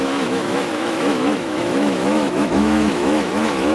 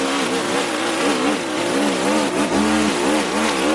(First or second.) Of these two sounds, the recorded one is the second